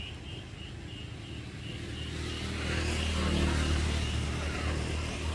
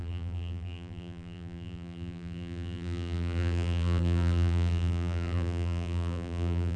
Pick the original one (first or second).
first